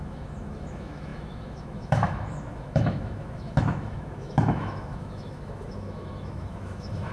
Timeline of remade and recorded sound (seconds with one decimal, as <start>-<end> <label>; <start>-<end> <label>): 0.0-7.1 remade